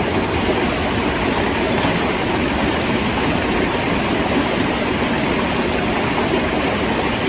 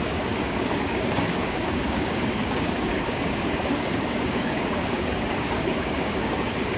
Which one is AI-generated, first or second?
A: second